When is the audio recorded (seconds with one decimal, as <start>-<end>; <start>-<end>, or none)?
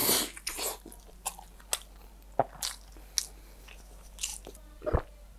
0.0-5.4